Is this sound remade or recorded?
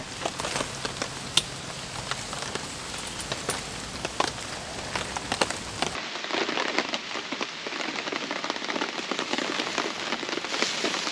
recorded